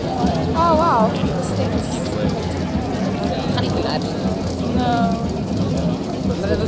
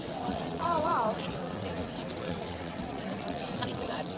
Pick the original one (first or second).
first